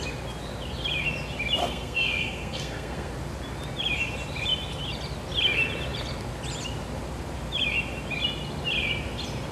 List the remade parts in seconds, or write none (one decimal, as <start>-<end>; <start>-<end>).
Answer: 1.6-3.1